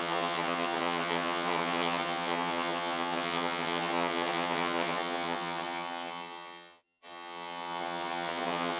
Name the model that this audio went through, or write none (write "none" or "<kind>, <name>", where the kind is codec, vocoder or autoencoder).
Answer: vocoder, HiFi-GAN